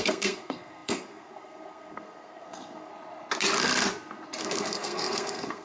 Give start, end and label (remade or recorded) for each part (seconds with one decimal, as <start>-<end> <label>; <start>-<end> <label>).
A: 0.0-2.9 remade; 2.9-4.4 recorded; 4.4-5.6 remade